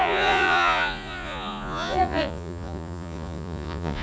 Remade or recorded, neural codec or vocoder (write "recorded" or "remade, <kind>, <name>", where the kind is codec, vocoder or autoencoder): remade, vocoder, Vocos